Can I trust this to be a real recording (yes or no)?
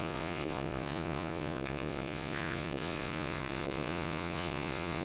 no